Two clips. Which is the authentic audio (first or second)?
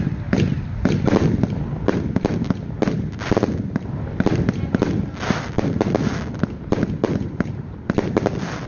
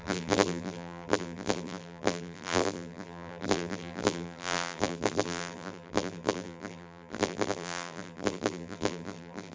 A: first